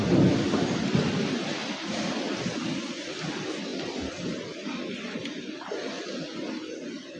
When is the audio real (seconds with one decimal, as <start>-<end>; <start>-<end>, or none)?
0.0-1.6; 2.7-3.7